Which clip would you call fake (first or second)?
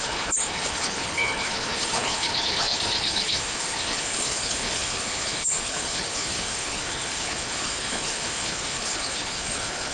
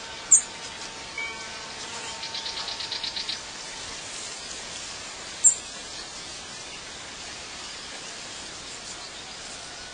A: first